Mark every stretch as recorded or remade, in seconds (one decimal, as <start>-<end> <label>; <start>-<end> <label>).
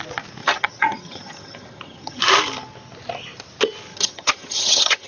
0.0-0.4 recorded; 0.4-2.2 remade; 2.2-3.9 recorded; 3.9-5.1 remade